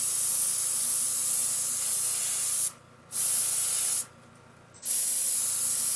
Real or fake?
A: real